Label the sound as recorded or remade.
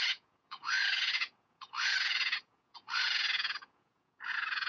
remade